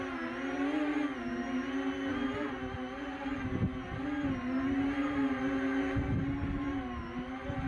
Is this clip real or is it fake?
real